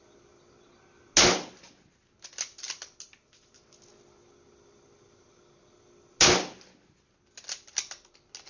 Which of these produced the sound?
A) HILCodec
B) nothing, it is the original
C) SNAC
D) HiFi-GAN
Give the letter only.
B